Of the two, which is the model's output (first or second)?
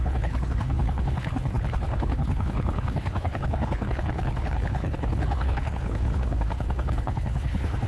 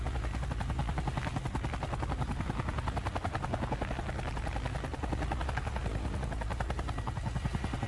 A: first